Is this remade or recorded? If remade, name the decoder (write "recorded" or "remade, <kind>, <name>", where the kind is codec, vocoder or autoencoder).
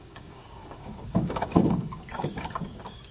remade, codec, DAC